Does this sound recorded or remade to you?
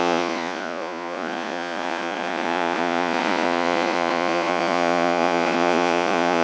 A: remade